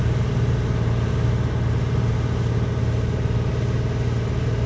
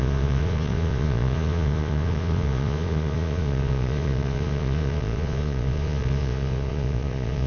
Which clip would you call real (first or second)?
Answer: first